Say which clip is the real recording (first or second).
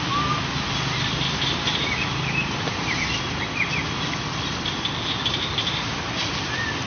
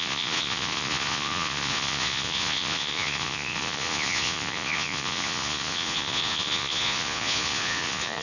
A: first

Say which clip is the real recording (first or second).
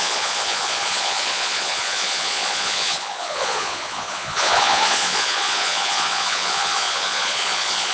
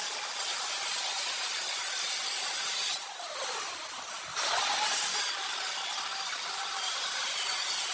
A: second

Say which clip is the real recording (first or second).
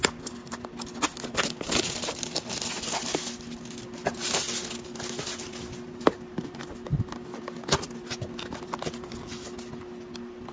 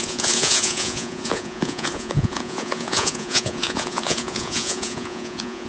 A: first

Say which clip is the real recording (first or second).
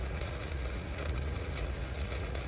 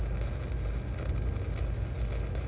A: second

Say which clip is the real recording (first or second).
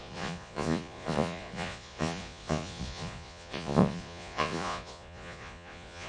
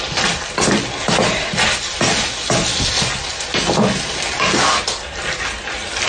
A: second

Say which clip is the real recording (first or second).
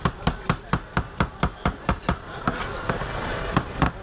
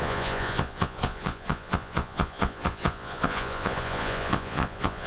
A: first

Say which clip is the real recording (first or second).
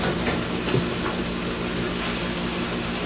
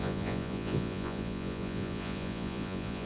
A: first